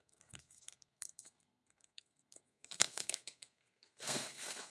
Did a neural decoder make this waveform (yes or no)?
yes